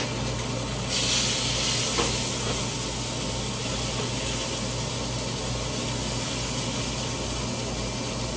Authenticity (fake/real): real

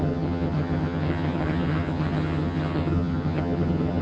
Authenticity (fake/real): fake